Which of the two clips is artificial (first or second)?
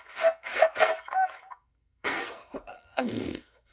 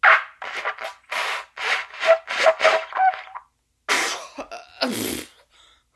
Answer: first